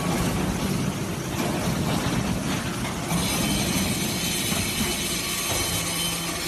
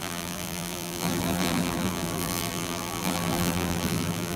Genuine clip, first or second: first